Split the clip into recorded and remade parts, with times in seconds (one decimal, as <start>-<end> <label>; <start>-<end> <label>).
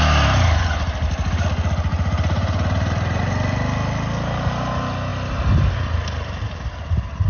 0.0-1.9 recorded; 1.9-3.2 remade; 3.2-7.3 recorded